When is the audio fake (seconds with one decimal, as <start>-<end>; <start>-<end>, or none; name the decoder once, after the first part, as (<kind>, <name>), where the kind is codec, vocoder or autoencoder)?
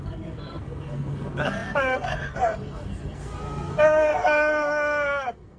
0.0-5.6 (codec, SNAC)